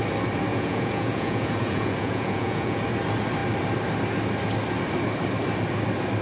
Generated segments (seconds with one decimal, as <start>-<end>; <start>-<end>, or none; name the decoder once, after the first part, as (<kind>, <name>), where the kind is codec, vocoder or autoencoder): 0.5-2.8 (vocoder, Vocos)